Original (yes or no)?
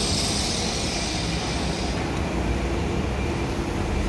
yes